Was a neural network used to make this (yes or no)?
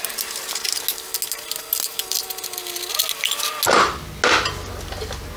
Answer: no